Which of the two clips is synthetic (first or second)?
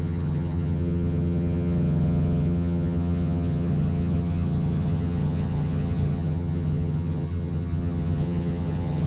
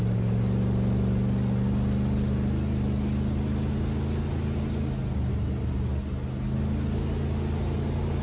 first